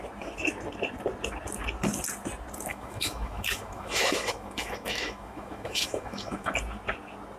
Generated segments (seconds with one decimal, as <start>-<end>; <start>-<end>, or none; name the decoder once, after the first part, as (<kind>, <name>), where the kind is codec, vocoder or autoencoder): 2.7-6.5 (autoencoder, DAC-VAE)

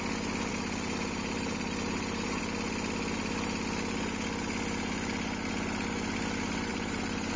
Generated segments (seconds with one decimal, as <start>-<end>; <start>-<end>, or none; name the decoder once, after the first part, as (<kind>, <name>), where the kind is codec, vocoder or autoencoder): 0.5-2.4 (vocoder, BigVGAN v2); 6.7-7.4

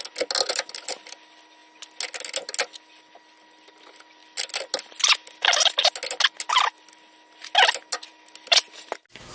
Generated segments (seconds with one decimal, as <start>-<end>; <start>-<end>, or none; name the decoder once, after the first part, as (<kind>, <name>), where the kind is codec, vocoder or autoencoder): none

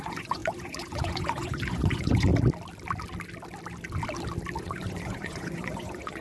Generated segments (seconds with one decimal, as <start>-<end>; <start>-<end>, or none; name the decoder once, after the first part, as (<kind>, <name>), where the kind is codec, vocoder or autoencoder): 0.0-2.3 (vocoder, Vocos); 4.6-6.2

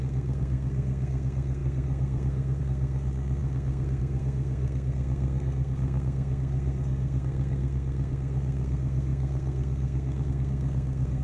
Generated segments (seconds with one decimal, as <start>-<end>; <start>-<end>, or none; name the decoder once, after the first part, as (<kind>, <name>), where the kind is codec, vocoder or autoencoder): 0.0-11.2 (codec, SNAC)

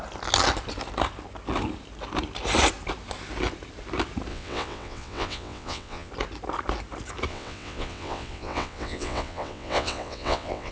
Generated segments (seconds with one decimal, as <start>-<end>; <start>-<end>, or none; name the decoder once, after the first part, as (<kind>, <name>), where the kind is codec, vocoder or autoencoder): 4.3-6.1 (vocoder, WaveNeXt); 7.3-10.7

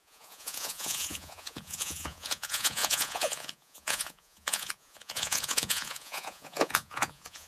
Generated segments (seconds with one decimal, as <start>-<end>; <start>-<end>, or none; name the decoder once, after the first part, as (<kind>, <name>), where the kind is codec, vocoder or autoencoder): 0.0-7.5 (vocoder, Vocos)